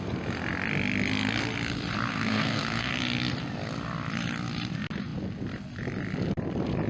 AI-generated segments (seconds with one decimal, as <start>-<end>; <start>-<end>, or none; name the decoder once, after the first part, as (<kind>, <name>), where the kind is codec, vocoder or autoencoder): 2.1-2.9 (codec, SNAC)